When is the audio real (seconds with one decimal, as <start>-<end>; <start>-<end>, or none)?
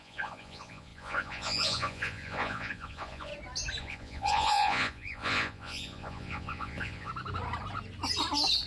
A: 3.3-3.8; 7.1-8.7